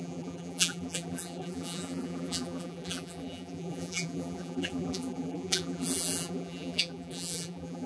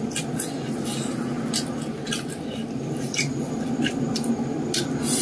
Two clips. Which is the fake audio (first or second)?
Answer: first